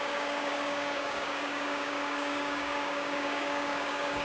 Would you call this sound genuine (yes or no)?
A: no